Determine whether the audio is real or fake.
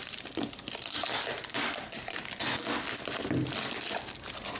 real